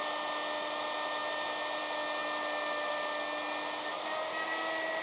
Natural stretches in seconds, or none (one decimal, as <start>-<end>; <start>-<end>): 0.0-5.0